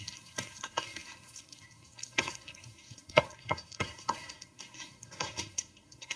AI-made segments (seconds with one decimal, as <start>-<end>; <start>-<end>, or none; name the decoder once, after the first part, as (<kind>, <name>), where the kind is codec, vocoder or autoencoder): 0.0-6.2 (codec, SNAC)